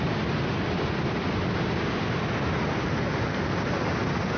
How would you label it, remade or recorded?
recorded